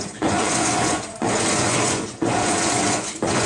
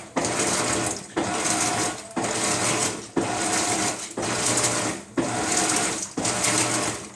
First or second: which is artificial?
first